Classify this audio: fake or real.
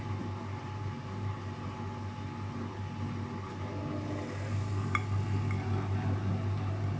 real